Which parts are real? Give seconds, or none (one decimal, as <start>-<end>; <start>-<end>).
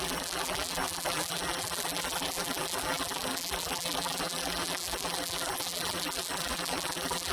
none